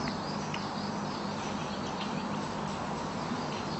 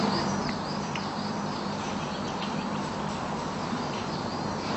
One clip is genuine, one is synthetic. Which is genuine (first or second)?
first